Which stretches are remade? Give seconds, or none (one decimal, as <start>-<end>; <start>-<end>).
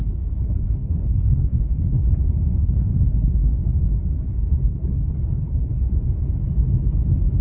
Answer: 0.0-2.1; 2.6-3.5; 4.3-5.9